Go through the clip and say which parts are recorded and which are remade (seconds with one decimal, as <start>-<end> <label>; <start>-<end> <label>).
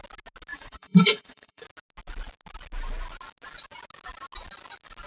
0.0-0.5 recorded; 0.5-1.6 remade; 1.6-5.1 recorded